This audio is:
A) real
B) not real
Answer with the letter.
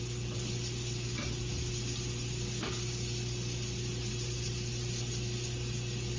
A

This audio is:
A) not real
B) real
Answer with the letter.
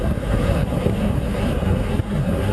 A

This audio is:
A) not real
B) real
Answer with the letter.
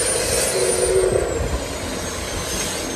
B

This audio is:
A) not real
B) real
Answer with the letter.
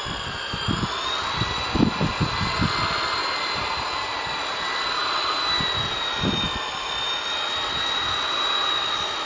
B